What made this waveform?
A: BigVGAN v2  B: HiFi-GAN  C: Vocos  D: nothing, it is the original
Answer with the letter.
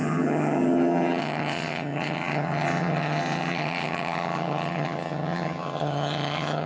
B